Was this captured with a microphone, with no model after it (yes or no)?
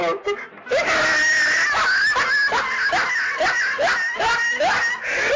yes